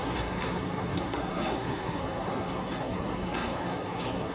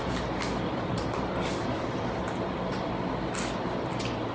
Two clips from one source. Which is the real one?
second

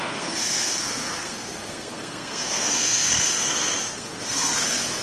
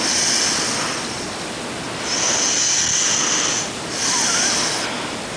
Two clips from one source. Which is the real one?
second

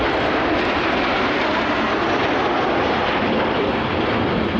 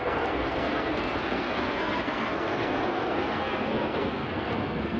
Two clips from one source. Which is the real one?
first